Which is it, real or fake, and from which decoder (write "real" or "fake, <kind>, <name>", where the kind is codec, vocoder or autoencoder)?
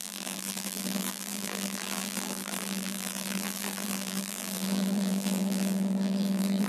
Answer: fake, vocoder, BigVGAN v2